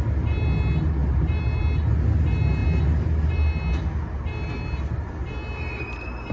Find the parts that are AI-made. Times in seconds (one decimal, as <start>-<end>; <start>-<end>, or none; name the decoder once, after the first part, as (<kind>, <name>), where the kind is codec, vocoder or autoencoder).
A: none